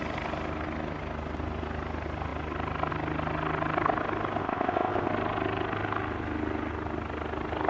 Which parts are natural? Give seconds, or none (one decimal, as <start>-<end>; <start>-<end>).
0.0-4.4; 5.1-7.7